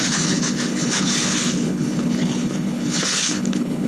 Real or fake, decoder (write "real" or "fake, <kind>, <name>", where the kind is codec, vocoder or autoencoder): fake, codec, HILCodec